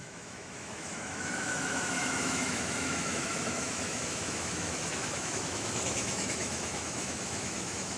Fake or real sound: fake